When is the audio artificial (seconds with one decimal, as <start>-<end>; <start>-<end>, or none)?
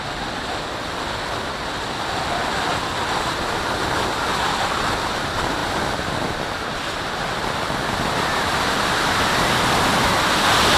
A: none